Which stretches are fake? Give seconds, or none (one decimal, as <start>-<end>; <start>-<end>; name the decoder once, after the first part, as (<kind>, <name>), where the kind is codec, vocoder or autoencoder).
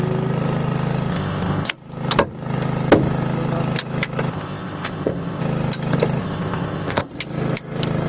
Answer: 1.1-1.7 (codec, ZipCodec); 4.3-5.4; 6.2-7.1